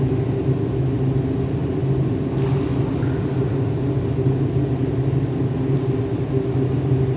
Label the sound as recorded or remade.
recorded